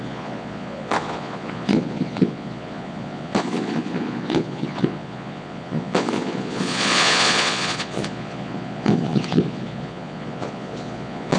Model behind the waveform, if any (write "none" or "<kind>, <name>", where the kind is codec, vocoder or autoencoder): vocoder, Vocos